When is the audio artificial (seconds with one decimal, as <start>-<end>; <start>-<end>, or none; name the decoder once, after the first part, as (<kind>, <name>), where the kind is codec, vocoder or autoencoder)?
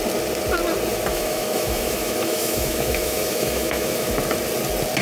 1.1-4.1 (autoencoder, DAC-VAE)